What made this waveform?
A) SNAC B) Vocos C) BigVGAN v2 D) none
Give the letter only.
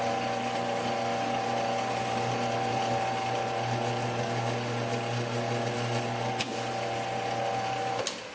D